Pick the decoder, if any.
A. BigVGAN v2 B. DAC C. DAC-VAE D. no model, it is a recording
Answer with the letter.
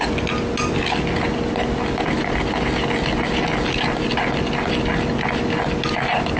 D